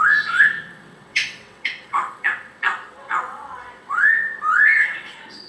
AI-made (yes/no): yes